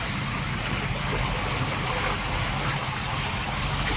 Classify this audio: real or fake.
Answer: real